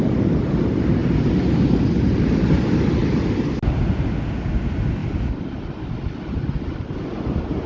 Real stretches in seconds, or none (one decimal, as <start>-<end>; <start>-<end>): 0.0-7.7